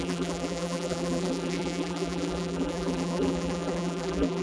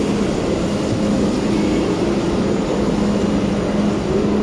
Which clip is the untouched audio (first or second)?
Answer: second